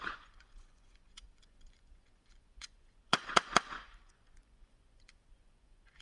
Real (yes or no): no